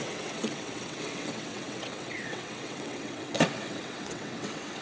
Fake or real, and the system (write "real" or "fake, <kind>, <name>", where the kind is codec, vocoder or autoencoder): fake, vocoder, WaveNeXt